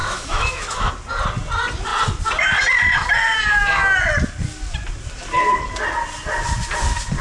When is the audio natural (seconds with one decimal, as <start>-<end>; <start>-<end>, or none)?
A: 0.9-7.2